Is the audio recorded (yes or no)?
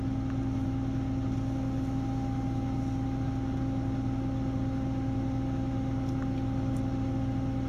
yes